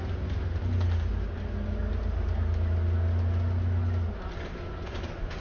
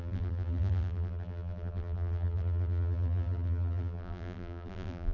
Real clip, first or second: first